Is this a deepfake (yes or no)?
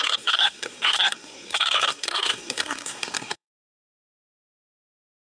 yes